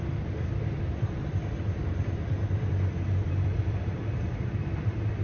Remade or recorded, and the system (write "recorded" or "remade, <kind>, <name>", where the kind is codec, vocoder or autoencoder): remade, vocoder, BigVGAN v2